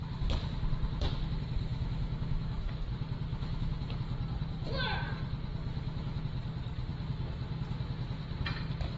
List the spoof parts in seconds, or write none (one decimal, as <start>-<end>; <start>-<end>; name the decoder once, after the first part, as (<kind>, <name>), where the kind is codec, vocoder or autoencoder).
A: 1.7-2.7 (autoencoder, DAC-VAE); 3.3-4.0; 5.6-6.2